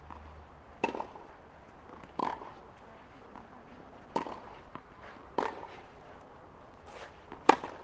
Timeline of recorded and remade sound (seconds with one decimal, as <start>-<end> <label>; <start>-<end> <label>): 0.0-4.7 recorded; 4.7-5.8 remade; 5.8-7.8 recorded